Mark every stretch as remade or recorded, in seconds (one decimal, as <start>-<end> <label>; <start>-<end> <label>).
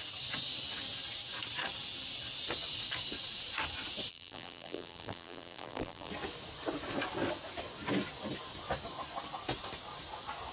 0.0-4.1 recorded; 4.1-6.1 remade; 6.1-10.5 recorded